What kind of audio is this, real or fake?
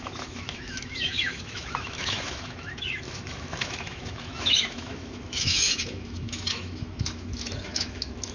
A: fake